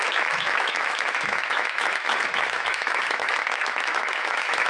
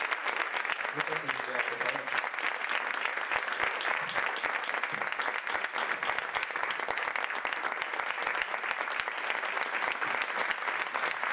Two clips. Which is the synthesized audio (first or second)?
first